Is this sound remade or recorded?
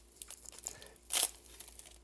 recorded